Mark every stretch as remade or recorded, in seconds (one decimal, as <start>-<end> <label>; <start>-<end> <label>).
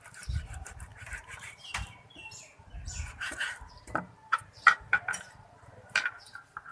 0.0-6.7 remade